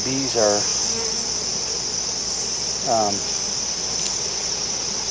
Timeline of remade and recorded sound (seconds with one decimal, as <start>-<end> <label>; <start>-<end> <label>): 0.0-5.1 recorded